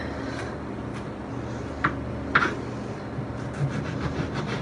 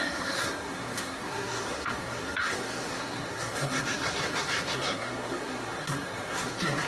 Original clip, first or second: first